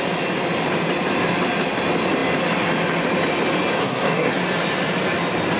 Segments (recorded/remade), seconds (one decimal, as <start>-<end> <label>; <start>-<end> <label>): 0.0-3.8 recorded; 3.8-4.4 remade; 4.4-5.6 recorded